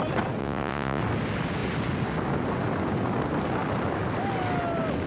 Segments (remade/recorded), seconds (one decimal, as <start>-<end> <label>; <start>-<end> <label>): 0.0-0.4 recorded; 0.4-1.0 remade; 1.0-5.1 recorded